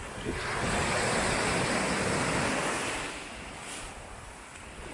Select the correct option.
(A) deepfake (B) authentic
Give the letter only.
B